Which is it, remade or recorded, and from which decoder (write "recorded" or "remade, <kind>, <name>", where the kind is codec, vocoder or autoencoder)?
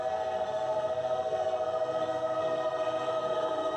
remade, codec, SNAC